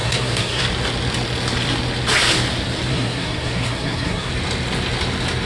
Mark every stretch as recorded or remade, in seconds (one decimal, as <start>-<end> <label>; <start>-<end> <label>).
0.0-0.6 remade; 0.6-2.9 recorded; 2.9-4.3 remade; 4.3-5.5 recorded